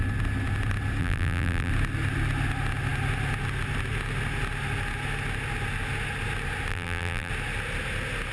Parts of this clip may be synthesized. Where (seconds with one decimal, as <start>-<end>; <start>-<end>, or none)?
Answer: 1.0-1.7; 6.7-7.3